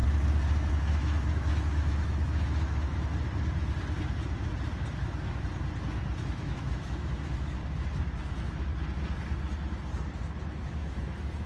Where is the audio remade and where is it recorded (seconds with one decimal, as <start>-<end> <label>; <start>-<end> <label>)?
0.0-0.7 recorded; 0.7-3.1 remade; 3.1-6.2 recorded; 6.2-7.6 remade; 7.6-8.2 recorded; 8.2-8.7 remade; 8.7-10.7 recorded; 10.7-11.5 remade